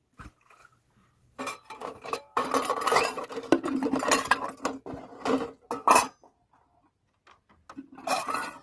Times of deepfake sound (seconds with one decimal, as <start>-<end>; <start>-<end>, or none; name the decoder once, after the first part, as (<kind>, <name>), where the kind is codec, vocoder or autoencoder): 0.6-1.4 (vocoder, BigVGAN v2); 1.8-3.5